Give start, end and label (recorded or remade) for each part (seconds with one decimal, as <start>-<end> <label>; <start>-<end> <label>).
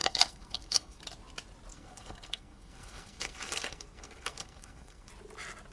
0.0-1.0 remade; 1.0-1.7 recorded; 1.7-5.1 remade; 5.1-5.7 recorded